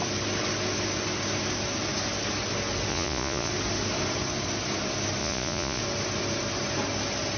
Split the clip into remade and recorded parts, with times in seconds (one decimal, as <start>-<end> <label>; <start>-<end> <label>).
0.0-2.9 recorded; 2.9-3.5 remade; 3.5-5.2 recorded; 5.2-5.8 remade; 5.8-7.4 recorded